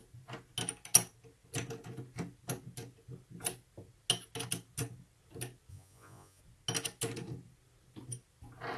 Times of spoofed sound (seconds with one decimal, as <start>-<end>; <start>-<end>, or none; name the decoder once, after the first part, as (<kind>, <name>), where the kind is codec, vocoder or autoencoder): 5.7-6.4 (vocoder, Vocos)